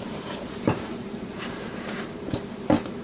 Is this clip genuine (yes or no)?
no